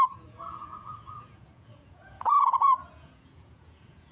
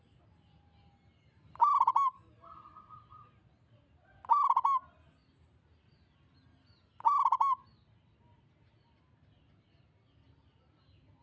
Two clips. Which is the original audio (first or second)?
second